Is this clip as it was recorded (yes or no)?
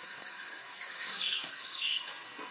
no